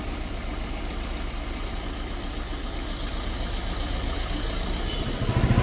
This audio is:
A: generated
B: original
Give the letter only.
B